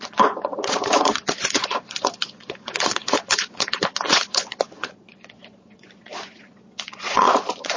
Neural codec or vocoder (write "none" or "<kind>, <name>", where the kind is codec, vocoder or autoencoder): vocoder, Vocos